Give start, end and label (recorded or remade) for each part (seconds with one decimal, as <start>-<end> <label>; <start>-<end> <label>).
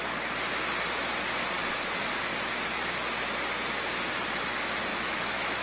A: 0.0-4.9 recorded; 4.9-5.6 remade